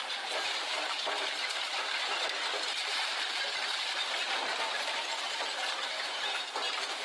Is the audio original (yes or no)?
no